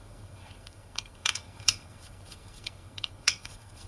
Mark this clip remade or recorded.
remade